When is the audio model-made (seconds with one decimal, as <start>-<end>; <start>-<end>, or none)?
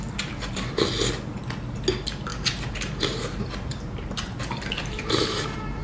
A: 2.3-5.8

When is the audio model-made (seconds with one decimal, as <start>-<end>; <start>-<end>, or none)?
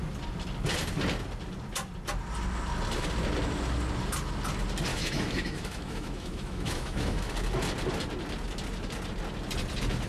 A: 4.9-7.3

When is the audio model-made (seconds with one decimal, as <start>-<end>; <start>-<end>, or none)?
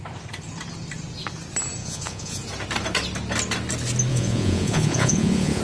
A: 1.8-2.4; 4.1-5.6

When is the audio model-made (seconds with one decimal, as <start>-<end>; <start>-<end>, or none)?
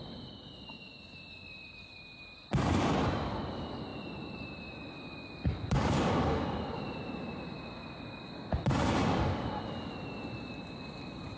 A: none